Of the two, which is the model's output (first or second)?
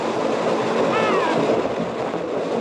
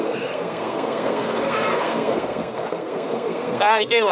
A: second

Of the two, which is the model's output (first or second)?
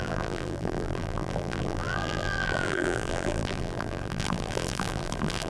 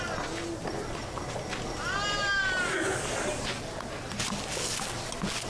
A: first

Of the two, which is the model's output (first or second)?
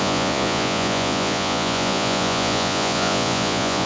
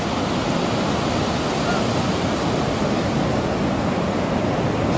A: first